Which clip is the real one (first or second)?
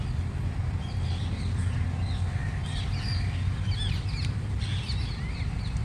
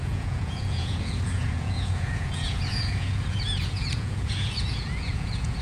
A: first